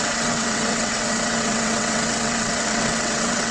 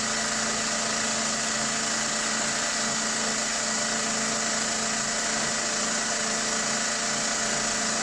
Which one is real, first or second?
second